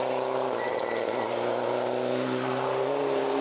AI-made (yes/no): no